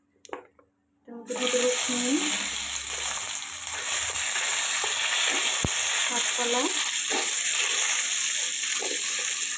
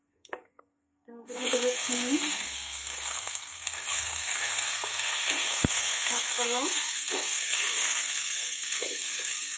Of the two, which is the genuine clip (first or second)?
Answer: first